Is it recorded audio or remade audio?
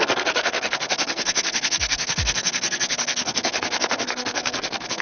remade